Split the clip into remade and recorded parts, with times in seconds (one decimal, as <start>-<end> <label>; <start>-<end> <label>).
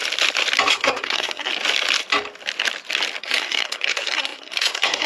0.0-0.7 recorded; 0.7-1.5 remade; 1.5-3.2 recorded; 3.2-5.1 remade